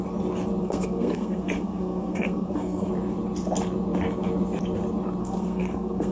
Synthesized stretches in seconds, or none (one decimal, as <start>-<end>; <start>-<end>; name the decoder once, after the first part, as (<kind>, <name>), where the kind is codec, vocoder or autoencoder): 0.6-2.9 (codec, SNAC); 5.2-6.1